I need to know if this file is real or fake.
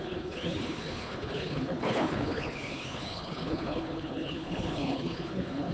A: fake